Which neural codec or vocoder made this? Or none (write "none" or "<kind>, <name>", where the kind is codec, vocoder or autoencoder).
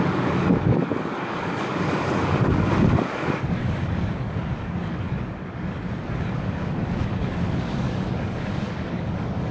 codec, DAC